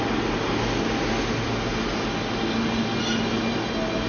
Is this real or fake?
real